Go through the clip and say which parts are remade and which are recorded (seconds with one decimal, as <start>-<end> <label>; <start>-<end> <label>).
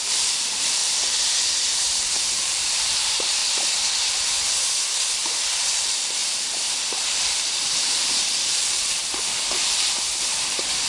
0.0-0.8 remade; 0.8-2.0 recorded; 2.0-3.4 remade; 3.4-5.5 recorded; 5.5-10.9 remade